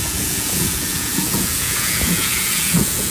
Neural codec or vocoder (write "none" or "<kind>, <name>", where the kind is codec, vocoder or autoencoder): vocoder, Vocos